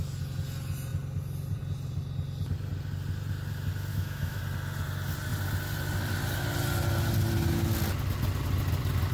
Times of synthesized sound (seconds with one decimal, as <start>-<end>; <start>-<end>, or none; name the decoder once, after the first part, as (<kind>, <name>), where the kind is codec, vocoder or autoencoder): 3.9-4.4 (autoencoder, DAC-VAE)